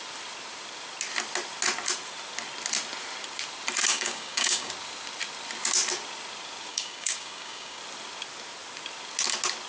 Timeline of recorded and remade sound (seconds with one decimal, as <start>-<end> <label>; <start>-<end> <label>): 0.0-3.9 recorded; 3.9-4.7 remade; 4.7-6.7 recorded; 6.7-7.8 remade; 7.8-9.7 recorded